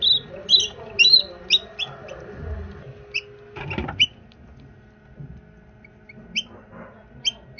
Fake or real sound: real